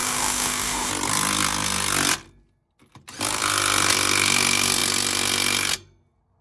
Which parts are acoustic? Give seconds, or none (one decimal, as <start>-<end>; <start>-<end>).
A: 0.9-6.4